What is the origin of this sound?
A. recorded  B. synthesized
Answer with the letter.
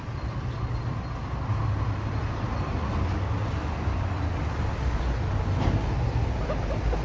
A